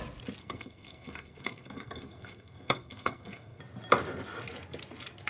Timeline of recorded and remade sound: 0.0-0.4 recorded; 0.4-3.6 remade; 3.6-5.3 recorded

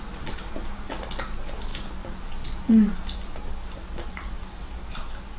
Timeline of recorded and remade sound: 0.0-5.4 recorded

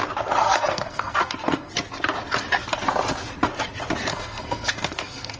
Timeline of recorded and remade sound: 0.0-0.4 recorded; 0.4-1.7 remade; 1.7-4.1 recorded; 4.1-5.4 remade